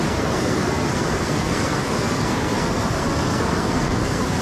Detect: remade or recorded remade